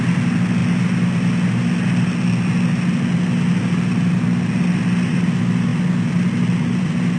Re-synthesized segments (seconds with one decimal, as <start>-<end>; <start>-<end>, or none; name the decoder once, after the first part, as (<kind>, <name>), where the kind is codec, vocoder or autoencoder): none